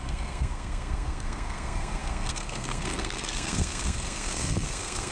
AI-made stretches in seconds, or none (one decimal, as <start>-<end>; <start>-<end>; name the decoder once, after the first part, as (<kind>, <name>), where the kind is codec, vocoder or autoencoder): 0.0-5.1 (codec, SNAC)